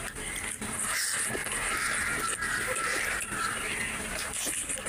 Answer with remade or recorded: recorded